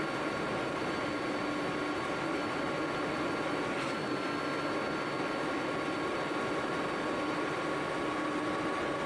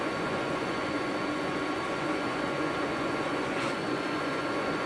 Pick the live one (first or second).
first